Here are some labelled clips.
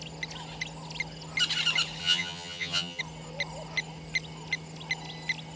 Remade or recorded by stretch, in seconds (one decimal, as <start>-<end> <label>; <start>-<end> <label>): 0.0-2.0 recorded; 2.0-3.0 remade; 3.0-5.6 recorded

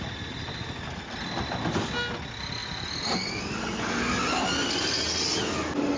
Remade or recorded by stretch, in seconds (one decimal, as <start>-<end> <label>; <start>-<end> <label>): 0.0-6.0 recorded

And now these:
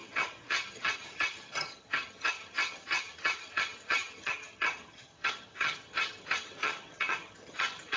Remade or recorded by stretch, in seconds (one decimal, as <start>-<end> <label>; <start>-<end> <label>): 0.0-8.0 remade

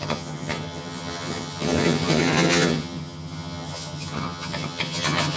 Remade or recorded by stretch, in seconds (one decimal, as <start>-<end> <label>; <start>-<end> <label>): 0.0-5.4 remade

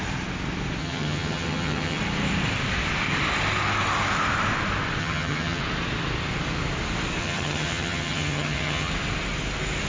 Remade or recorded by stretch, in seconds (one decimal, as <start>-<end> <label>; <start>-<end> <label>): 0.0-0.8 recorded; 0.8-2.0 remade; 2.0-5.0 recorded; 5.0-5.6 remade; 5.6-7.2 recorded; 7.2-8.9 remade; 8.9-9.9 recorded

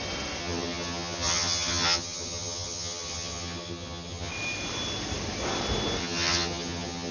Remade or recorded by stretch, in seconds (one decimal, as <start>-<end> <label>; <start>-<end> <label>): 0.0-0.4 recorded; 0.4-4.3 remade; 4.3-6.0 recorded; 6.0-7.1 remade